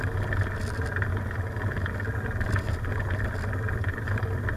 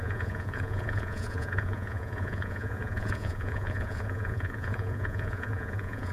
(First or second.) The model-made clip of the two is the second